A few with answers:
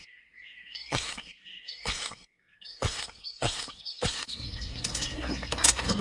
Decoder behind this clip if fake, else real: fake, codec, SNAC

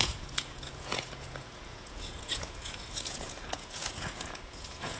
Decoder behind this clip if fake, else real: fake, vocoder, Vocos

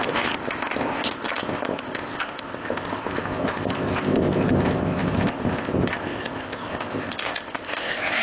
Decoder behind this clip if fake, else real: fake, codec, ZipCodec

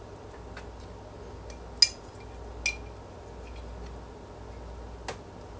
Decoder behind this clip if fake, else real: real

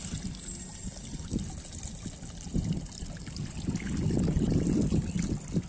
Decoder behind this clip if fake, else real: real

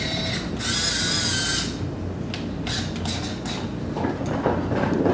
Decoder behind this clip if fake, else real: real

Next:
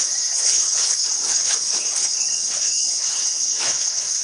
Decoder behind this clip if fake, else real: fake, codec, HILCodec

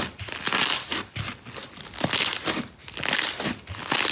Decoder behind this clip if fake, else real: real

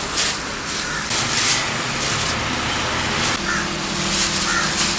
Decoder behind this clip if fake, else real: real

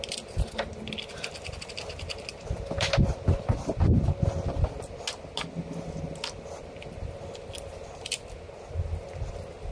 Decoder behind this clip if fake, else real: real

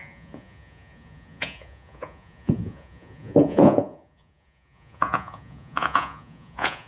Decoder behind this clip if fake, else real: fake, vocoder, Vocos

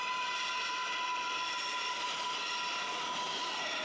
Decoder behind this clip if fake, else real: real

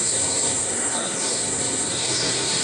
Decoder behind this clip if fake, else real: fake, codec, SNAC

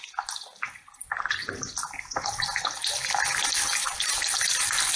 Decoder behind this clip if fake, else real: real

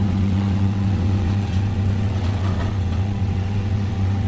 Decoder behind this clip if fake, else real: fake, vocoder, WaveNeXt